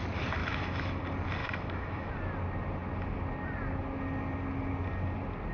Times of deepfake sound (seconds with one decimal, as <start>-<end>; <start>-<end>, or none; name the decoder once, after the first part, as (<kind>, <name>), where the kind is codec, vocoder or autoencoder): 0.4-1.0 (autoencoder, DAC-VAE); 1.4-2.1